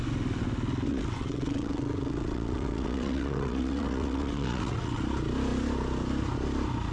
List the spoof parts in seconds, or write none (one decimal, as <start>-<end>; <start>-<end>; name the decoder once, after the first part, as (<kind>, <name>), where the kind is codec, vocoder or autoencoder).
0.9-5.0 (vocoder, WaveNeXt)